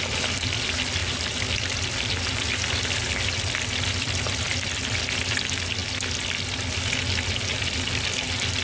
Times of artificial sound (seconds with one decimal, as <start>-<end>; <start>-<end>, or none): 1.0-5.0